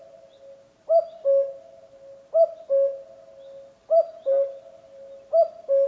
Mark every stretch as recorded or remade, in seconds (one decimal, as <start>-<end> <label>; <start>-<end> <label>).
0.0-5.9 recorded